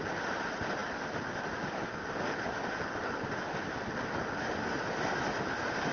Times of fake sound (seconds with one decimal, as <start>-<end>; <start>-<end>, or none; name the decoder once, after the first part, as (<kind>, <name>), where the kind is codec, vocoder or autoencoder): none